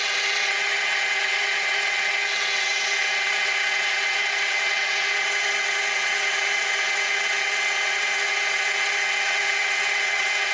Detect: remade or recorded remade